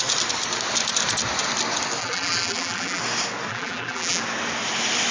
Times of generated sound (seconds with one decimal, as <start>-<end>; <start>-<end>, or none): 2.0-3.0; 3.5-4.2